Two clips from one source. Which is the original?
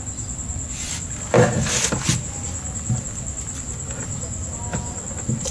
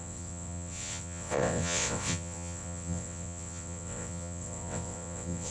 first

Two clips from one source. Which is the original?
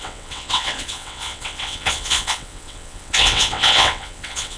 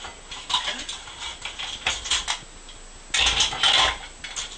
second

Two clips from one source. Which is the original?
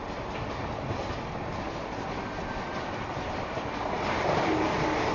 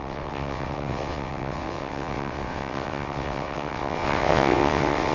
first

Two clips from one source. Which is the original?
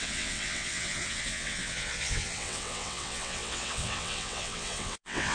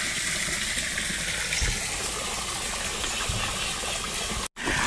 second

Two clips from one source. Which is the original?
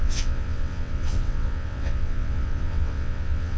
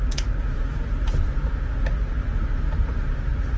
second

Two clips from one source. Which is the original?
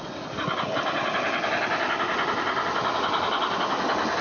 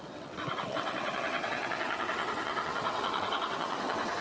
first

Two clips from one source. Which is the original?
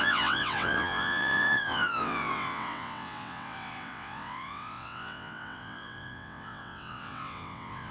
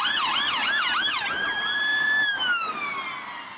second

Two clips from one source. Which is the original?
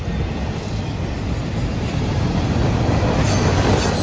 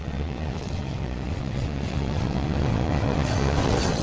first